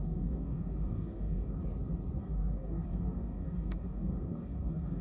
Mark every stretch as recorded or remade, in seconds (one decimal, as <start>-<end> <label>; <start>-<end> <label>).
0.0-1.6 remade; 1.6-2.2 recorded; 2.2-5.0 remade